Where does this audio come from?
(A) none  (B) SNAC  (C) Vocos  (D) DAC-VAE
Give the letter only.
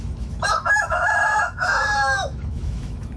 D